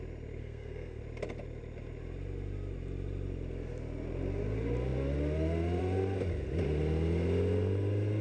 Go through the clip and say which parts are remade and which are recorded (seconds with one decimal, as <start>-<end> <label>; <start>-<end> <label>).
0.0-0.4 recorded; 0.4-1.0 remade; 1.0-8.2 recorded